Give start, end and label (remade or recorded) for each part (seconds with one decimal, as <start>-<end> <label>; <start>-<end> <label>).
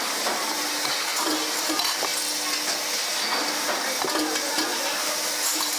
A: 0.0-1.1 remade; 1.1-1.7 recorded; 1.7-2.1 remade; 2.1-5.8 recorded